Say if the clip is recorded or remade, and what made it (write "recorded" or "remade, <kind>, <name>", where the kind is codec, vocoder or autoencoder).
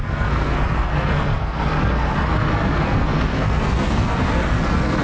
remade, codec, SNAC